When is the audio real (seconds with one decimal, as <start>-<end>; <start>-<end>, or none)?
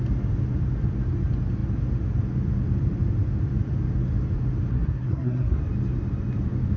0.0-4.7; 5.6-6.8